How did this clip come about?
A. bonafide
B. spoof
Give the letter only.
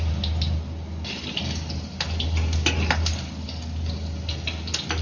A